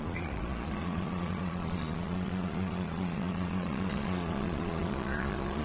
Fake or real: fake